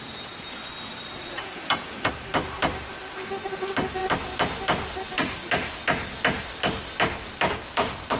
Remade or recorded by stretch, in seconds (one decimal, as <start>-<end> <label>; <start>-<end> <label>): 0.0-1.2 recorded; 1.2-2.1 remade; 2.1-8.2 recorded